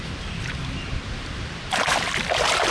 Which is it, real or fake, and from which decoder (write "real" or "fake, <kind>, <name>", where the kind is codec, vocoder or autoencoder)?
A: real